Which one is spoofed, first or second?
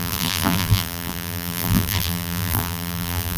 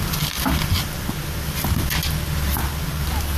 first